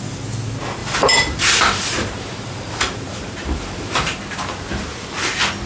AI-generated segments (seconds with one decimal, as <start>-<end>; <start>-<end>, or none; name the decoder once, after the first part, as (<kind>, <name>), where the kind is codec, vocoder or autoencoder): 0.8-4.2 (vocoder, BigVGAN v2)